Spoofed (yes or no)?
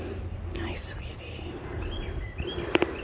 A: no